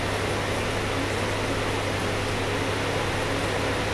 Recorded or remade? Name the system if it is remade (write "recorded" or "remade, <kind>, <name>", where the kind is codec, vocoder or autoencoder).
recorded